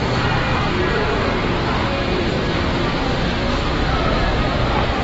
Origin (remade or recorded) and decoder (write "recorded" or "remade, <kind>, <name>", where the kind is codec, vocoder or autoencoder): recorded